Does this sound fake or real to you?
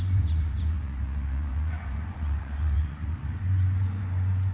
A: fake